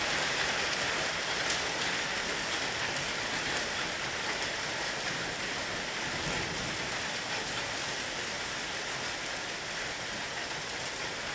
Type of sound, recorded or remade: recorded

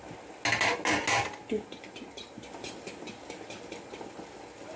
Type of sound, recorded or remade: recorded